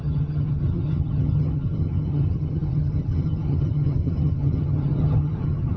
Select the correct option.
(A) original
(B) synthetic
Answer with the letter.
B